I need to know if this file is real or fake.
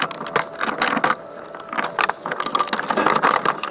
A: real